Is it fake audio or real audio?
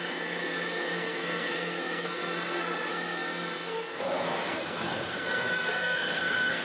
fake